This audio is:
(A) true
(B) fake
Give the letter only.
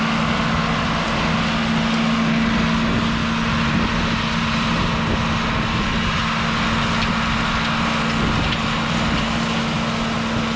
A